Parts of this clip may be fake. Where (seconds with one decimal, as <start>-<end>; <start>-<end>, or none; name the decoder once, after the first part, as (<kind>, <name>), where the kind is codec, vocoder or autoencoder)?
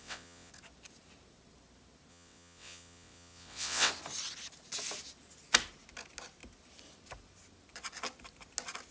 0.0-0.5 (vocoder, WaveNeXt); 2.1-3.9